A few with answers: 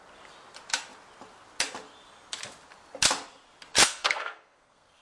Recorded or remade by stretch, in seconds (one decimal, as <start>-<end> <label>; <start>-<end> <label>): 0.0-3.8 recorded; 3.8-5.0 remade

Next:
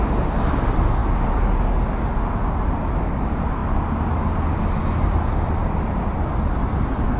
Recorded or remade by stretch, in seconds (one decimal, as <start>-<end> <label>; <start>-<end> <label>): 0.0-7.2 recorded

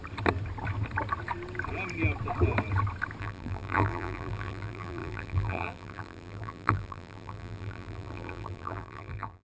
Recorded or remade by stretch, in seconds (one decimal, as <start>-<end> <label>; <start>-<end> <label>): 0.0-3.2 recorded; 3.2-9.4 remade